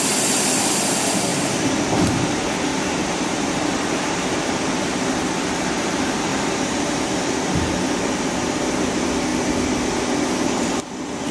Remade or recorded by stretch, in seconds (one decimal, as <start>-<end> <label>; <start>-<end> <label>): 0.0-1.3 recorded; 1.3-5.1 remade; 5.1-6.3 recorded; 6.3-7.0 remade; 7.0-11.3 recorded